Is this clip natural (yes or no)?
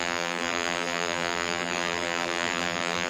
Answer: no